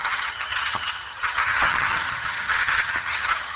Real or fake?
fake